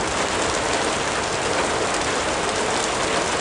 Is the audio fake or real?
real